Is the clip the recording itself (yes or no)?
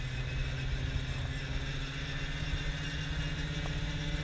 yes